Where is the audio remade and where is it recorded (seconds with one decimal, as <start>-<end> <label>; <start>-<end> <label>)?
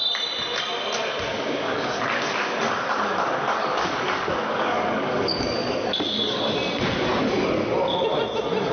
0.0-1.3 recorded; 1.3-6.4 remade; 6.4-8.7 recorded